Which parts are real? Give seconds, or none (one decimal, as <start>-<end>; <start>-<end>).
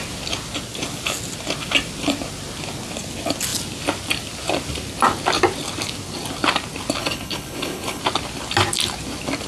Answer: 0.0-7.0; 8.0-9.5